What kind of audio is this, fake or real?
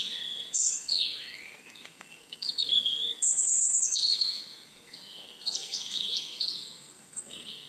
fake